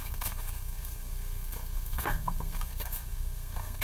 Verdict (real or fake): fake